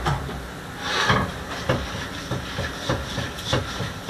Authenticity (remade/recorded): recorded